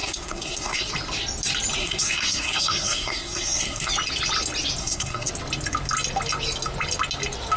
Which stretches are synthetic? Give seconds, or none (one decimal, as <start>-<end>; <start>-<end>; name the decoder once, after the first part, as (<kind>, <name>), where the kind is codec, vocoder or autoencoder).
0.0-0.9 (codec, SNAC); 1.8-3.9; 4.8-5.3